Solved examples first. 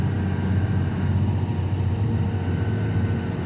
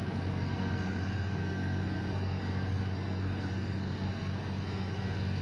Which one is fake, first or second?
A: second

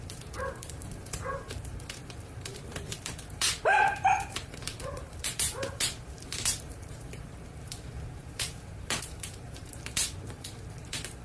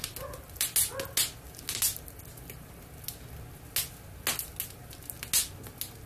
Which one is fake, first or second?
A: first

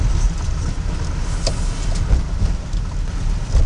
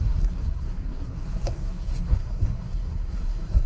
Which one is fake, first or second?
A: second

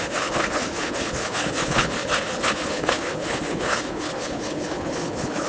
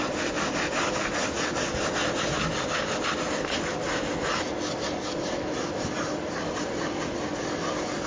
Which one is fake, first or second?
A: first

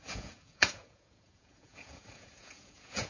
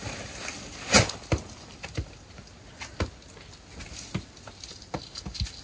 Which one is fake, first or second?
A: first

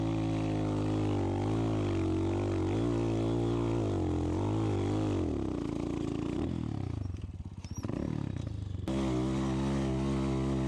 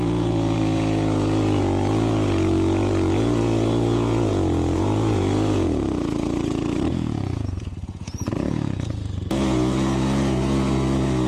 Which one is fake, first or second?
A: second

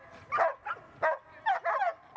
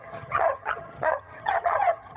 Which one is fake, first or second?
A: second